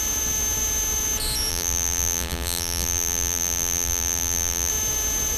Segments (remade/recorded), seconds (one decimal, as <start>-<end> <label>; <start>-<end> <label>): 0.0-1.5 recorded; 1.5-4.7 remade; 4.7-5.4 recorded